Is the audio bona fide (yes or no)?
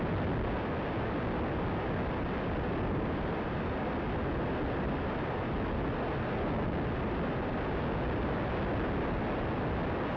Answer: yes